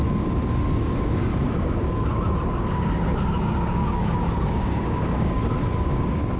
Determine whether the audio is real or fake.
fake